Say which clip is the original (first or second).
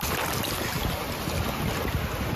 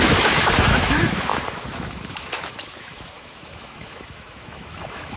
first